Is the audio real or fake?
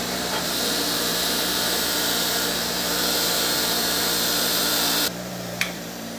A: fake